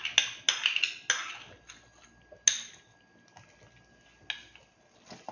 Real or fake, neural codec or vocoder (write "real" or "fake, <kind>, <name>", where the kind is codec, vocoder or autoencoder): real